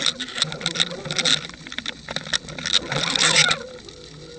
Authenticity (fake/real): real